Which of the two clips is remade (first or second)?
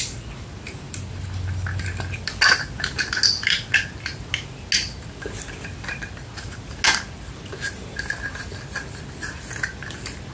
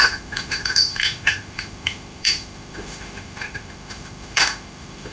second